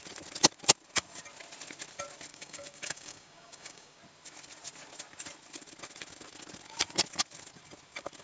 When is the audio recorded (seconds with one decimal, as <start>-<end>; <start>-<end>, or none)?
0.0-2.3; 4.0-8.2